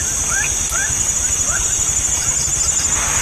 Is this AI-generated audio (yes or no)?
no